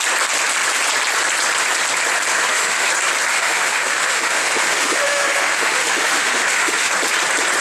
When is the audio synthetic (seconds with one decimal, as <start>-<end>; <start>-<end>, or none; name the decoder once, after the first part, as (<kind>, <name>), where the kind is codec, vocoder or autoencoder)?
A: 2.3-2.9 (autoencoder, DAC-VAE); 3.3-6.9

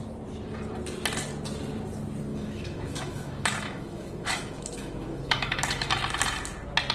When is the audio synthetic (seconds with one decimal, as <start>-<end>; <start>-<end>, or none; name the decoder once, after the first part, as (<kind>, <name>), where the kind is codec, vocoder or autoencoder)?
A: 2.3-5.9 (autoencoder, DAC-VAE)

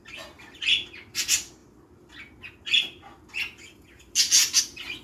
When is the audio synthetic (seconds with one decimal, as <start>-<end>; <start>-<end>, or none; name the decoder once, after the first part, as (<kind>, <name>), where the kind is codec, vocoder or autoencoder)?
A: none